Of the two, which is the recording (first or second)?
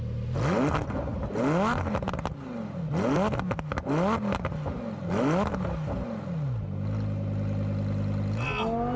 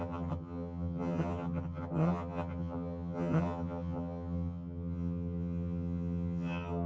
first